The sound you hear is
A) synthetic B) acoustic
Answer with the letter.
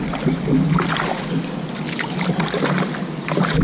B